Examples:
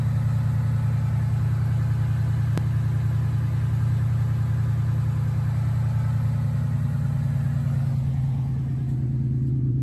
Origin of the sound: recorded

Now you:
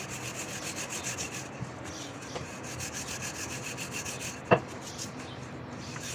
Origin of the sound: recorded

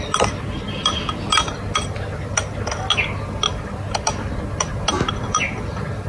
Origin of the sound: recorded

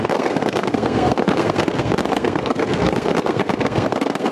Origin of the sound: remade